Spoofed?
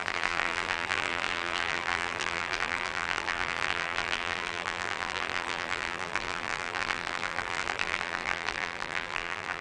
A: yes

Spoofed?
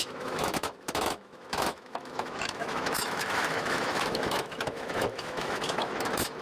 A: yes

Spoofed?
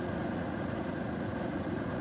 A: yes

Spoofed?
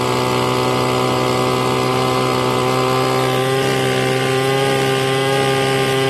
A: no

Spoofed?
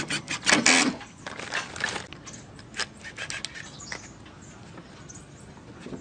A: no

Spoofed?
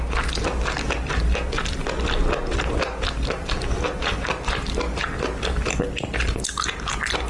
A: no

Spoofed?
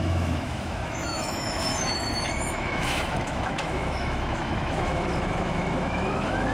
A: yes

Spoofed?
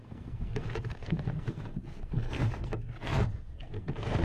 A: yes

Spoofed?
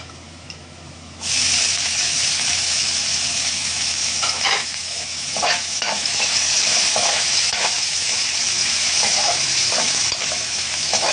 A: yes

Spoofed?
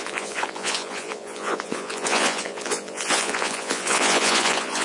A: yes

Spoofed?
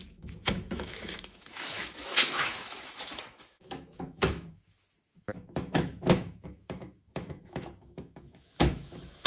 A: yes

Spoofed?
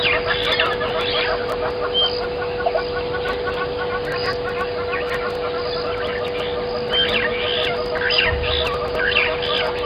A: no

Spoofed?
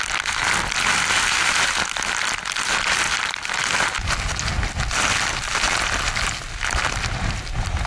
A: no